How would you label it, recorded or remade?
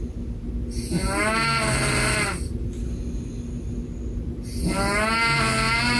recorded